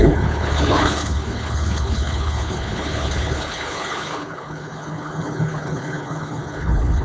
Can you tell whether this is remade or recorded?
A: remade